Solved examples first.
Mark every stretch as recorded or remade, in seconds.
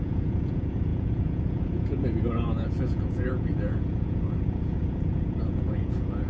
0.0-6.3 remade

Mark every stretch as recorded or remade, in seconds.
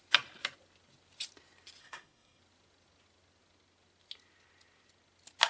0.0-1.8 recorded; 1.8-2.4 remade; 2.4-5.5 recorded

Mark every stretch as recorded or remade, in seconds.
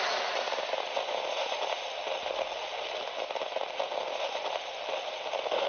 0.0-5.7 recorded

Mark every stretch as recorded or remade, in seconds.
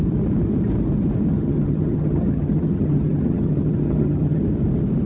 0.0-1.3 recorded; 1.3-4.4 remade; 4.4-5.1 recorded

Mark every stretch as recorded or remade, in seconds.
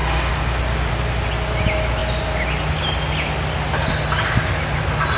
0.0-5.2 recorded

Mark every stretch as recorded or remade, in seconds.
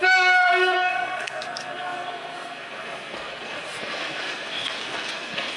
0.0-5.6 remade